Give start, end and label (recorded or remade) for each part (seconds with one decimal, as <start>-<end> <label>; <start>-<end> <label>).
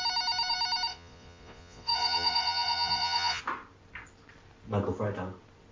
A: 0.0-0.9 recorded; 0.9-3.4 remade; 3.4-5.7 recorded